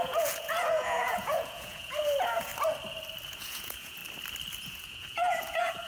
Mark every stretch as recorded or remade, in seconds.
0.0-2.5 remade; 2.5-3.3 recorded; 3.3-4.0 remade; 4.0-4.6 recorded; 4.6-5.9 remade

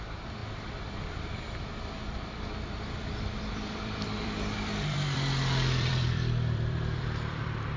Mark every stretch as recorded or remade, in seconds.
0.0-7.8 remade

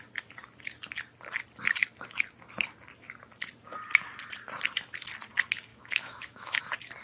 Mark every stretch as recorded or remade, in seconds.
0.0-5.7 recorded; 5.7-6.6 remade; 6.6-7.0 recorded

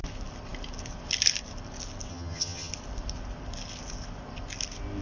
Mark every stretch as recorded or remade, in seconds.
0.0-2.1 recorded; 2.1-2.7 remade; 2.7-5.0 recorded

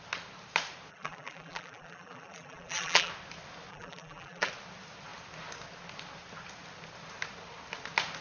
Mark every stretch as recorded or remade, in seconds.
0.0-0.9 recorded; 0.9-3.1 remade; 3.1-3.7 recorded; 3.7-4.5 remade; 4.5-8.2 recorded

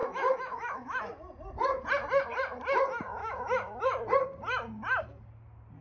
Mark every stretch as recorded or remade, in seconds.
0.0-1.0 remade; 1.0-3.2 recorded; 3.2-3.8 remade; 3.8-5.8 recorded